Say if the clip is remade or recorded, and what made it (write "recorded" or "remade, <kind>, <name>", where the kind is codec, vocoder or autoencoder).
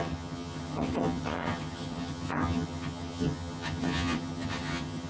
remade, vocoder, HiFi-GAN